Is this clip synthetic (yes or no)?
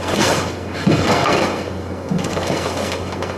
yes